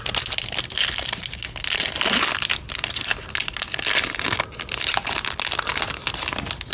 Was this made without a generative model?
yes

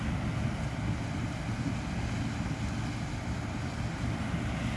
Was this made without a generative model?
yes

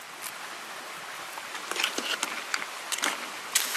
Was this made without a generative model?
yes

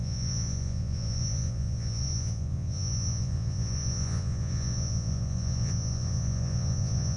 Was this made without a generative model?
no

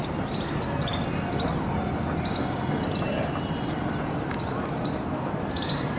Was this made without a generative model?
yes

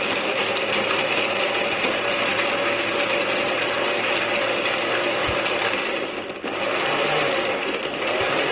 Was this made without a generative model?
yes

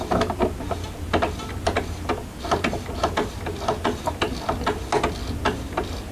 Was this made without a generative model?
yes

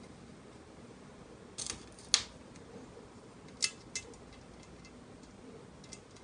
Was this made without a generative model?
yes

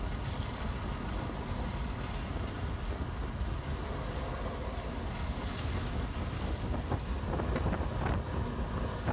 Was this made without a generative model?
yes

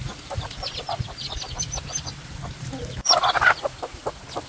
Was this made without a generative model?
yes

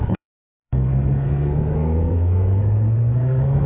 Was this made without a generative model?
no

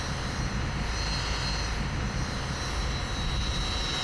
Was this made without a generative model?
yes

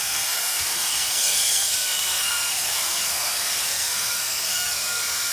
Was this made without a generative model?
no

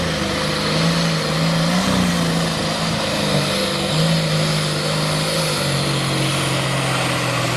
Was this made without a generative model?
yes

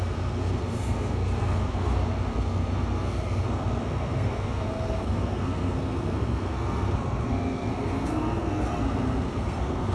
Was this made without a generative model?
no